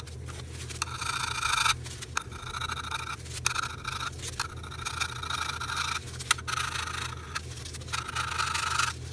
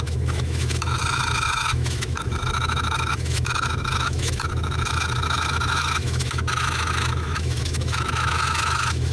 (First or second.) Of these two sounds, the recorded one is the first